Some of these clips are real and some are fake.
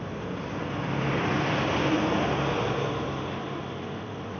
fake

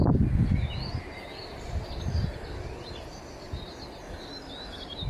real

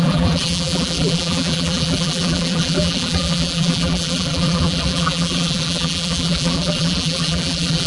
fake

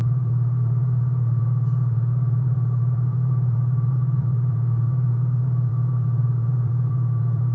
fake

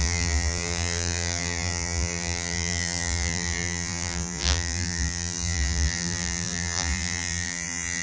fake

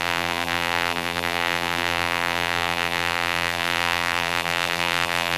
fake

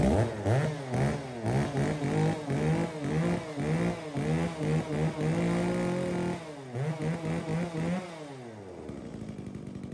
real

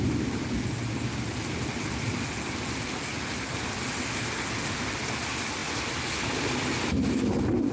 real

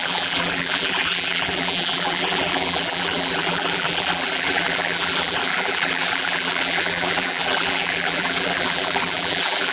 fake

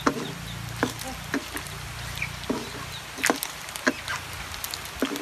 real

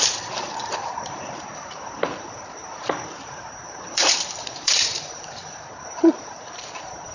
fake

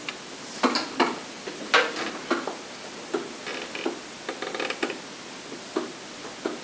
real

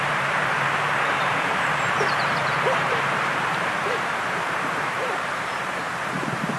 fake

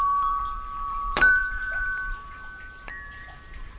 fake